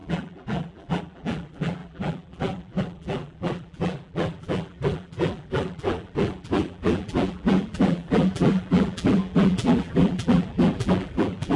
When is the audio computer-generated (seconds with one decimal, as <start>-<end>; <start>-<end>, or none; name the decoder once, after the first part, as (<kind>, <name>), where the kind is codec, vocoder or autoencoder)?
0.0-11.6 (vocoder, BigVGAN v2)